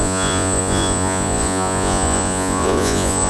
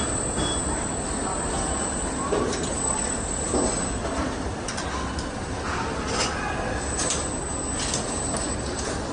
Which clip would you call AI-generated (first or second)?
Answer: first